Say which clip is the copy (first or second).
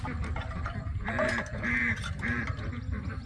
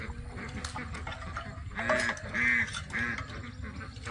first